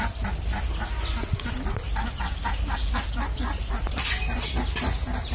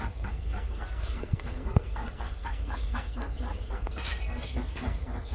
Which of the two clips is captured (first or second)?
first